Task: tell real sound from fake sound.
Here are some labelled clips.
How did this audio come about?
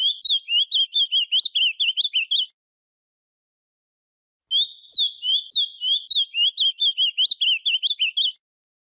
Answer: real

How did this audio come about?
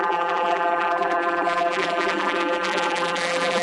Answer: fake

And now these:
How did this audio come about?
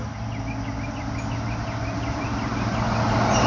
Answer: real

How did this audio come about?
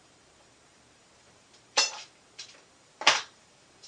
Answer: fake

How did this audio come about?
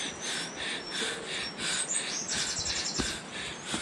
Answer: real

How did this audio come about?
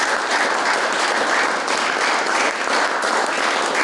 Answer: real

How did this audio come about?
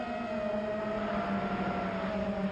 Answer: real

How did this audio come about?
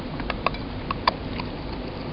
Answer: real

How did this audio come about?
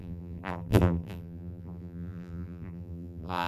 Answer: fake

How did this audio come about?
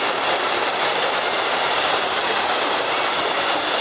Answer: real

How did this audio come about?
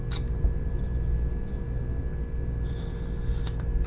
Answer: real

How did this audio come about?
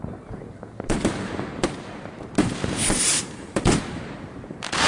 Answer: fake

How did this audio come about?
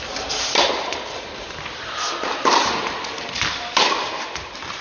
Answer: fake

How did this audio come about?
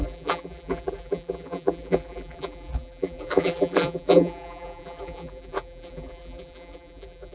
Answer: fake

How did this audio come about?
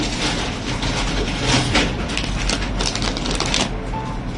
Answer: real